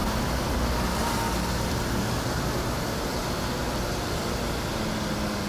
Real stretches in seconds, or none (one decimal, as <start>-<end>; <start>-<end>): 0.0-5.5